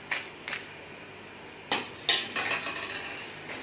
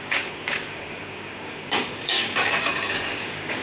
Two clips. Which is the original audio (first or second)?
first